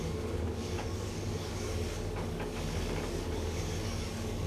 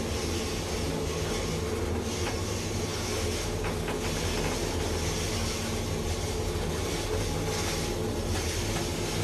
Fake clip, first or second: first